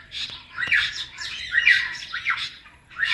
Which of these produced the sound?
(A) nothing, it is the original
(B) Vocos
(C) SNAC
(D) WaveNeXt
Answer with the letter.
B